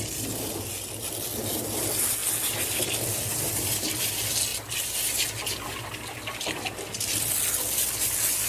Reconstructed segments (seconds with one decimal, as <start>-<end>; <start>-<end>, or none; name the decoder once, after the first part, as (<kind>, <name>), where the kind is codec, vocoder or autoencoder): none